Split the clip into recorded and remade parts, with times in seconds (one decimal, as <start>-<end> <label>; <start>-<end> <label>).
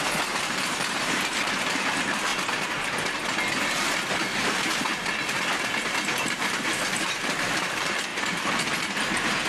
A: 0.0-2.3 remade; 2.3-5.8 recorded; 5.8-8.1 remade; 8.1-9.5 recorded